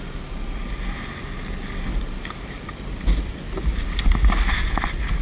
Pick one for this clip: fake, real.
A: real